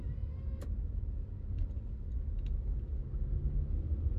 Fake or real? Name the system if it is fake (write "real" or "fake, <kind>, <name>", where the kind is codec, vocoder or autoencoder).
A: real